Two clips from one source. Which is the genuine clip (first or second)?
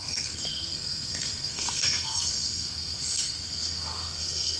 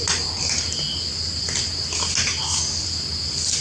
second